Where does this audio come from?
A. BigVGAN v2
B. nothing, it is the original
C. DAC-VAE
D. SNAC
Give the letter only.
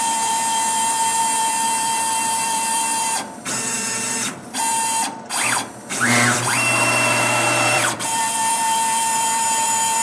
A